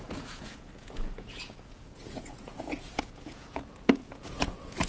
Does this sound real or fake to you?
fake